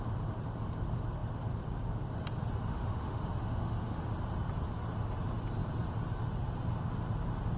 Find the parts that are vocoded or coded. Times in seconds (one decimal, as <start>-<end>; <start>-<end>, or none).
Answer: 2.7-4.0